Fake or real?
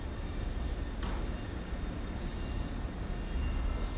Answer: real